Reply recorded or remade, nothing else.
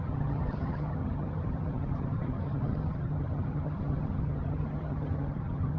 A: remade